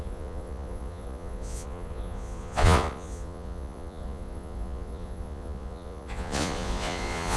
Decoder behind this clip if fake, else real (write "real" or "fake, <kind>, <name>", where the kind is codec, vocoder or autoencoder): fake, vocoder, Vocos